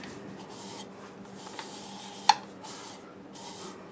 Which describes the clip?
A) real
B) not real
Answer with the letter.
A